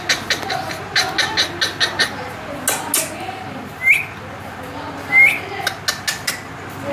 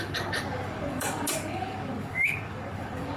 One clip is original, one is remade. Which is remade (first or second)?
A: second